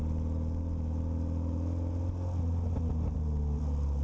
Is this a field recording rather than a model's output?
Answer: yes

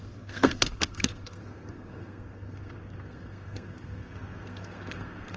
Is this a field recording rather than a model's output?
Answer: no